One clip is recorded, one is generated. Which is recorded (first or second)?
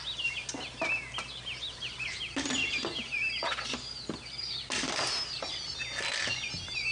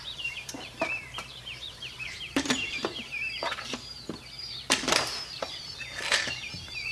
first